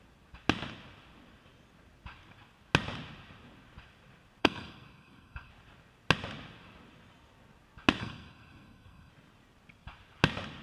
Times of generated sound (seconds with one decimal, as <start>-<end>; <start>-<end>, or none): 4.4-5.5; 8.0-9.1